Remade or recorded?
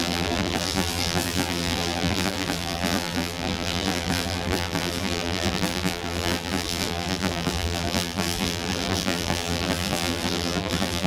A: remade